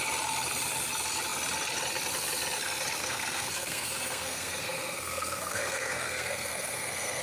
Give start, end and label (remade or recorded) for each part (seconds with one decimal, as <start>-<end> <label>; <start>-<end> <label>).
0.0-3.0 recorded; 3.0-7.2 remade